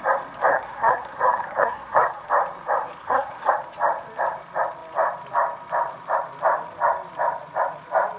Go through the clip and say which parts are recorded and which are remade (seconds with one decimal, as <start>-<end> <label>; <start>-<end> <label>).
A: 0.0-0.5 recorded; 0.5-2.3 remade; 2.3-3.0 recorded; 3.0-3.5 remade; 3.5-8.2 recorded